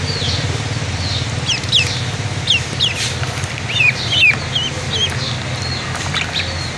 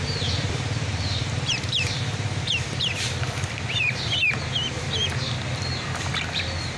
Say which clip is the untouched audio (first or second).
first